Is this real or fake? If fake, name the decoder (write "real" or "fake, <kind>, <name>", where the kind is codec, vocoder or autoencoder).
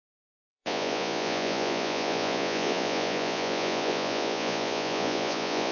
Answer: fake, vocoder, Vocos